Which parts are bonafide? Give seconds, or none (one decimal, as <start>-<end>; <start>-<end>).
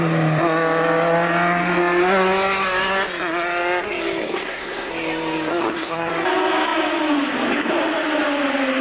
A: 0.0-4.2; 4.9-5.5; 6.1-8.8